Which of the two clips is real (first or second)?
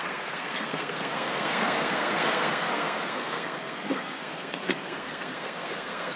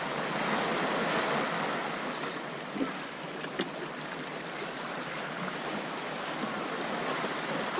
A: second